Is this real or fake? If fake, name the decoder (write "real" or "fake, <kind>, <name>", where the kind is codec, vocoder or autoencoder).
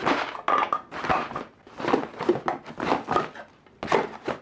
real